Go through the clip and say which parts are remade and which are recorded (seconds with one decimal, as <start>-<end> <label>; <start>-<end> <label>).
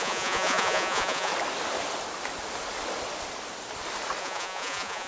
0.0-1.3 remade; 1.3-4.2 recorded; 4.2-5.1 remade